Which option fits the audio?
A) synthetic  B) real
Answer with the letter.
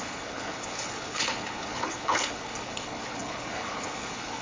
A